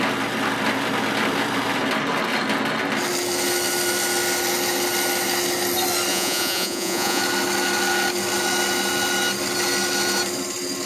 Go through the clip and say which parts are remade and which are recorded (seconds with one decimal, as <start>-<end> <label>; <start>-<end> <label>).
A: 0.0-6.1 recorded; 6.1-7.2 remade; 7.2-10.9 recorded